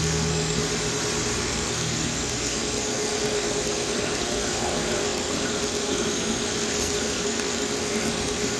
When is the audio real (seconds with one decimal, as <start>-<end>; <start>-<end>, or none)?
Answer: 0.6-1.4